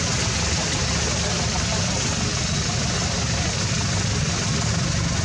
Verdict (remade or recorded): recorded